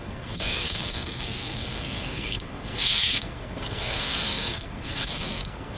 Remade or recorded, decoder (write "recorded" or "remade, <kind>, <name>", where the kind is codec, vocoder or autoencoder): remade, codec, SNAC